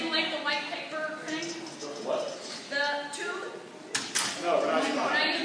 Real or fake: real